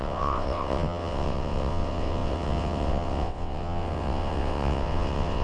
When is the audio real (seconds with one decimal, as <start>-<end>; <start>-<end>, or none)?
none